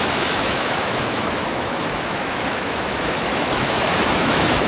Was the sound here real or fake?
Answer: fake